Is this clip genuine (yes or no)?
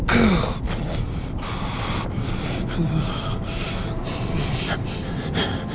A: yes